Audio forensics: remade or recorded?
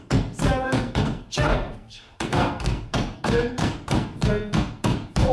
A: remade